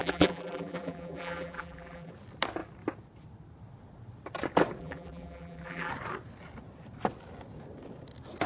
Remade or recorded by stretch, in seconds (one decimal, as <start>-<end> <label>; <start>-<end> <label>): 0.0-2.1 remade; 2.1-4.8 recorded; 4.8-5.9 remade; 5.9-8.5 recorded